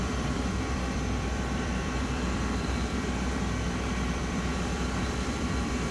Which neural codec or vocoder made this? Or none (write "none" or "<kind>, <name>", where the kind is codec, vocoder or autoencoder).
vocoder, BigVGAN v2